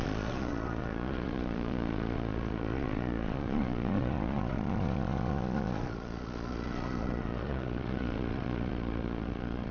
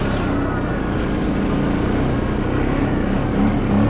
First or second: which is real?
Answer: second